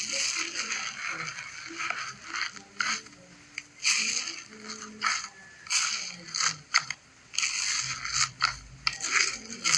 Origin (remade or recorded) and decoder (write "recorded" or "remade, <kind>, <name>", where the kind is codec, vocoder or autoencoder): recorded